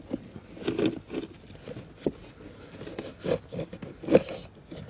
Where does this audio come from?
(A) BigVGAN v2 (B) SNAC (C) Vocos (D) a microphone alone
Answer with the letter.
D